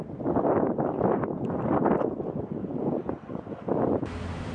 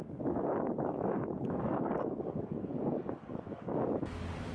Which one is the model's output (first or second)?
second